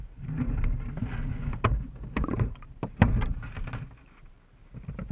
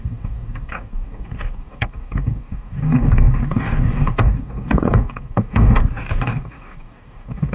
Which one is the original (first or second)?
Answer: first